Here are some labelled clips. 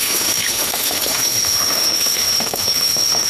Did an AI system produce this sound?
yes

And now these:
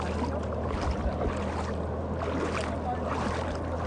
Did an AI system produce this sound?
no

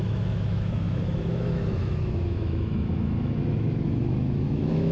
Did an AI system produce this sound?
yes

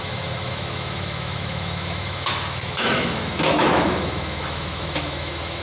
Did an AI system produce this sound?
yes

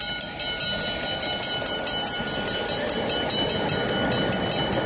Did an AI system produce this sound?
no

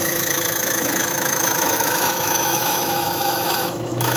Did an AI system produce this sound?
yes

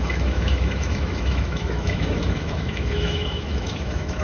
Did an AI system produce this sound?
yes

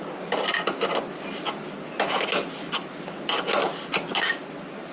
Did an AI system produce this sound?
no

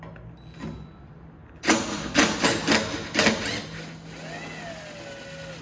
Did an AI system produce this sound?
no